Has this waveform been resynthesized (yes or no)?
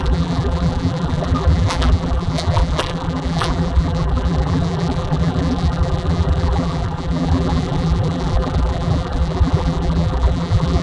yes